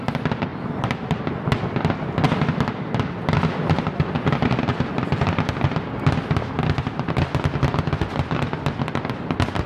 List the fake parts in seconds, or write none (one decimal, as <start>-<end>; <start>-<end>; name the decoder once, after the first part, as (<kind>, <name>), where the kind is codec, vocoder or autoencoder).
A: 0.5-1.2 (vocoder, BigVGAN v2)